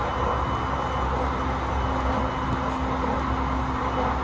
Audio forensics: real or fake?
real